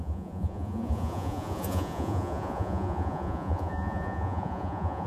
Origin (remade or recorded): remade